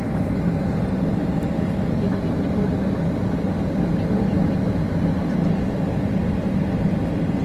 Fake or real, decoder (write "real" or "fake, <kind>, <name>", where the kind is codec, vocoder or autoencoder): real